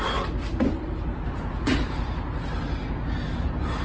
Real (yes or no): yes